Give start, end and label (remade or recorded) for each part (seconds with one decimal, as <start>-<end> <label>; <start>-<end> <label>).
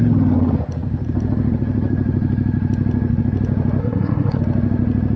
0.0-3.8 recorded; 3.8-4.4 remade; 4.4-5.2 recorded